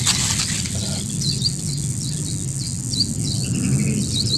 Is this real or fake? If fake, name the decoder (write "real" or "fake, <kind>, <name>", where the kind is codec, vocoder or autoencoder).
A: real